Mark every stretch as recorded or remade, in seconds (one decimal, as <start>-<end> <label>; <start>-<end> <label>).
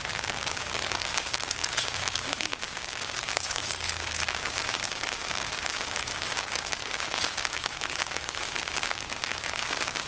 0.0-10.1 remade